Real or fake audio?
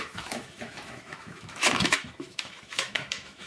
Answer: fake